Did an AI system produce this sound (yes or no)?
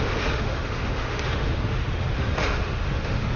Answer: yes